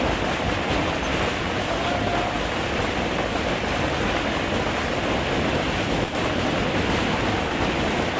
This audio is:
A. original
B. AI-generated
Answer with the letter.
A